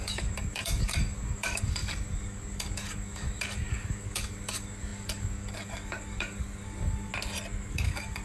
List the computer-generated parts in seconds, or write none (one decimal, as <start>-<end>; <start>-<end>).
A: 0.0-7.1; 7.7-8.2